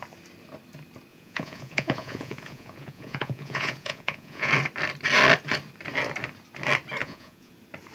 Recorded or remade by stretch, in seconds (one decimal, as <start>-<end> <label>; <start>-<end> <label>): 0.0-1.1 recorded; 1.1-4.5 remade; 4.5-7.0 recorded; 7.0-7.5 remade; 7.5-7.9 recorded